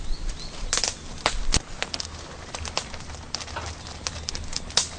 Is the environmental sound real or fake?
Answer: real